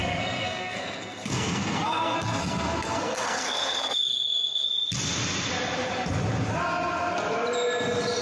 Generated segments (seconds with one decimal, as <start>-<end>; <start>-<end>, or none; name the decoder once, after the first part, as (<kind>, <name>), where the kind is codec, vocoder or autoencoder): 0.0-4.7 (codec, SNAC)